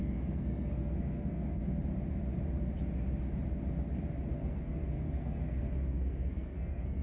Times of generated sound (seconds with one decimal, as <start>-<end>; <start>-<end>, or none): 0.0-1.6; 4.3-7.0